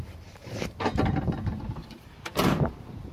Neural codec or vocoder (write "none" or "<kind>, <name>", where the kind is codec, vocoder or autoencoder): vocoder, BigVGAN v2